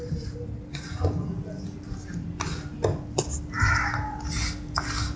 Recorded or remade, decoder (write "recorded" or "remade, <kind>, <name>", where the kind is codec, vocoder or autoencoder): recorded